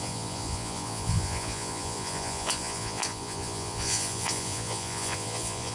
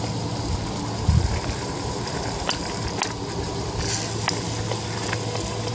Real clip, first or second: second